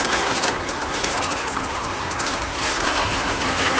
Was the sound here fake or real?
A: fake